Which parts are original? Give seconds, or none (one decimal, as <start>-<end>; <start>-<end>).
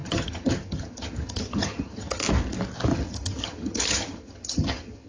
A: 2.2-2.9